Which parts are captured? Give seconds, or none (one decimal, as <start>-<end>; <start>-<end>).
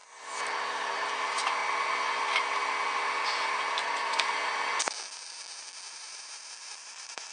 0.0-1.1; 1.6-5.9